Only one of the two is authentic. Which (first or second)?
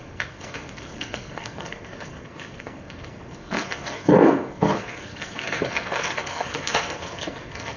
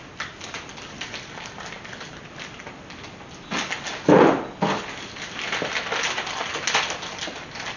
second